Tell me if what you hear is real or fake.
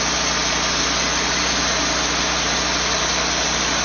real